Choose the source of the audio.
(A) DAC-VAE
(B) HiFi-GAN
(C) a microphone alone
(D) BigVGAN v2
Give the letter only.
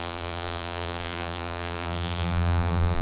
D